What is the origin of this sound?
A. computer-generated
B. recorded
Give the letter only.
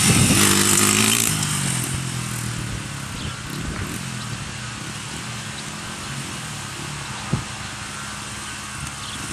B